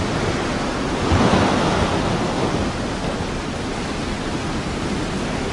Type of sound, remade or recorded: recorded